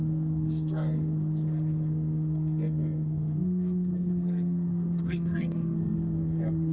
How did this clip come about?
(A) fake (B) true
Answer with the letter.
A